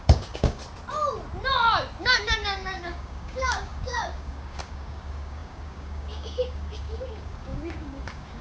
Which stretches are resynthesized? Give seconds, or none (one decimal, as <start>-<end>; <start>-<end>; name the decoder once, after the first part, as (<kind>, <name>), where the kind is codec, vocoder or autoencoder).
0.0-0.6 (codec, DAC); 2.0-8.4